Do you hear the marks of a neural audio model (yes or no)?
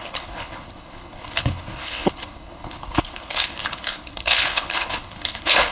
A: yes